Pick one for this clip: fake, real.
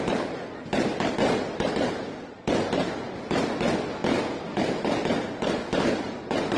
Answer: real